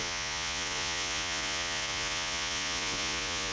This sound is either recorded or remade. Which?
remade